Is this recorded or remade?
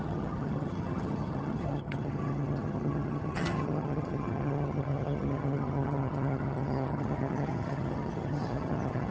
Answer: remade